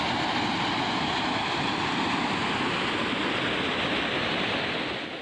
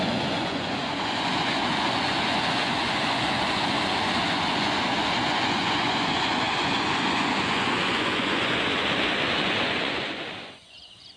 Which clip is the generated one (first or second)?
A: second